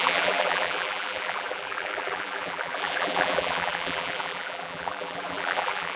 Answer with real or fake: fake